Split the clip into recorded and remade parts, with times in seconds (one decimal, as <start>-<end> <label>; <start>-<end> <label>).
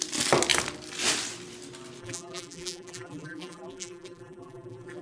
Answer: 0.0-2.0 recorded; 2.0-5.0 remade